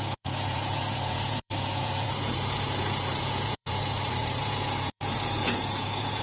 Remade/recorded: remade